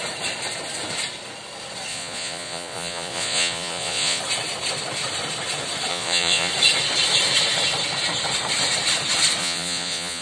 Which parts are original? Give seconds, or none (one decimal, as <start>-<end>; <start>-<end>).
0.0-1.9; 4.2-5.9; 6.5-9.4